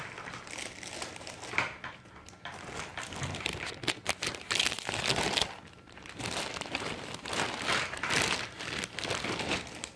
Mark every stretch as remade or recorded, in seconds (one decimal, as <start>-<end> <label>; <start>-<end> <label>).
0.0-10.0 recorded